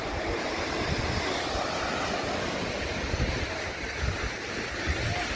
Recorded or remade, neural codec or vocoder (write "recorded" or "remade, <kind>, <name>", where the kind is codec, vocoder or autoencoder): recorded